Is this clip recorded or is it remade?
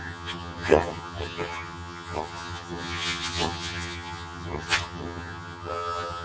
remade